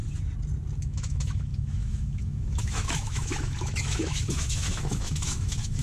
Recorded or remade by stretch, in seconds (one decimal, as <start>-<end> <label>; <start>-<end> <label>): 0.0-0.8 recorded; 0.8-5.8 remade